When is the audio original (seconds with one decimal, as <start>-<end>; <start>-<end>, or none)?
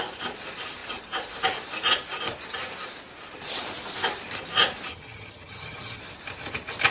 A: 0.0-4.9; 6.0-6.9